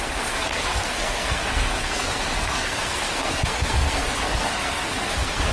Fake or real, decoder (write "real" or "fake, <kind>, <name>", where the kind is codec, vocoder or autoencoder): fake, codec, SNAC